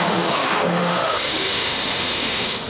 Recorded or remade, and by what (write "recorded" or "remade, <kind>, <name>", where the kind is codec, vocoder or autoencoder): remade, autoencoder, DAC-VAE